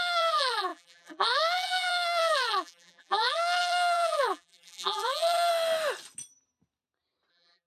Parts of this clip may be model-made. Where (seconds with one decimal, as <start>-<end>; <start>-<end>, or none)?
0.0-5.5; 7.3-7.7